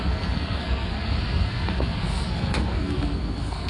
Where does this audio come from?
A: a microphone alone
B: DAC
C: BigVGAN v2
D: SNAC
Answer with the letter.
D